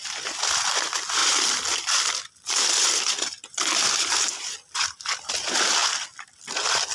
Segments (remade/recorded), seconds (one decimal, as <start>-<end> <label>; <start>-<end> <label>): 0.0-6.9 recorded